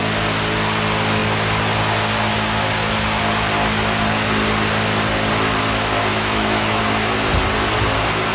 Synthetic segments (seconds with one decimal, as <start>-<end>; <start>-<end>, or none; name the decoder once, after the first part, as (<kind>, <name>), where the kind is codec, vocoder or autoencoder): 6.1-6.8 (autoencoder, DAC-VAE)